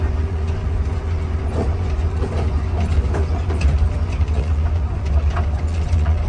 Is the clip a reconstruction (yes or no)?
yes